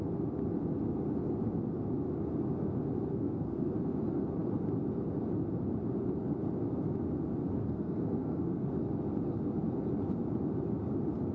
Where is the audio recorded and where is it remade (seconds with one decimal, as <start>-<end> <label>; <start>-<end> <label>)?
0.0-3.1 recorded; 3.1-3.7 remade; 3.7-7.6 recorded; 7.6-8.7 remade; 8.7-11.3 recorded